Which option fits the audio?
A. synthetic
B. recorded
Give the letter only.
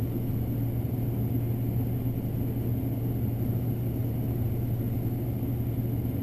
B